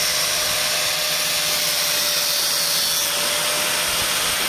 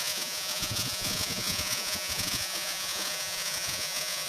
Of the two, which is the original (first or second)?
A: first